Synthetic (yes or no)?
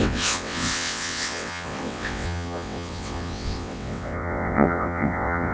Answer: yes